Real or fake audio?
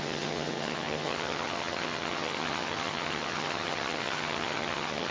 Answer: fake